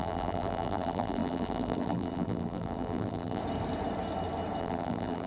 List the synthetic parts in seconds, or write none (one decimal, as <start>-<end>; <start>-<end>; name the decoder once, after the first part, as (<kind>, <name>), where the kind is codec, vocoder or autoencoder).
0.0-3.4 (vocoder, BigVGAN v2); 4.6-5.3